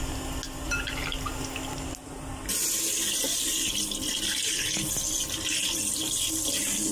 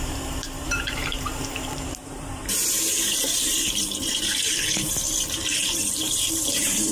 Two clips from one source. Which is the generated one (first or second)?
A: second